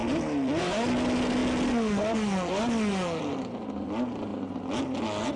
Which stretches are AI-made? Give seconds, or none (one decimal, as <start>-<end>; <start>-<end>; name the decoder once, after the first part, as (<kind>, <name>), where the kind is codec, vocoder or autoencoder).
none